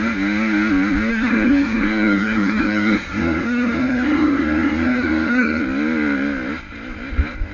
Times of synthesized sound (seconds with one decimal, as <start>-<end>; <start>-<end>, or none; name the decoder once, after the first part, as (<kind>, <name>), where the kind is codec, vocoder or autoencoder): 1.1-5.6 (codec, SNAC)